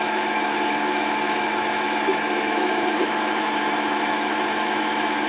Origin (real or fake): fake